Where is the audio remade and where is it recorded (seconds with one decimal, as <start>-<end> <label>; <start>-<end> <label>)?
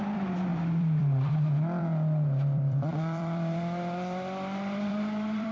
0.0-5.5 remade